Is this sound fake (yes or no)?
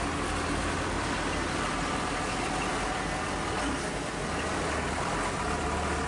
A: no